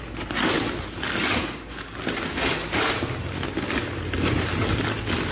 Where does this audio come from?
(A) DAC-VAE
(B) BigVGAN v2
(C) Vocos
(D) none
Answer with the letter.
D